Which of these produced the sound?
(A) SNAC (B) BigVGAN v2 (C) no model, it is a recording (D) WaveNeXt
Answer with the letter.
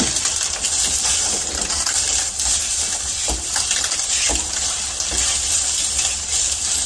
C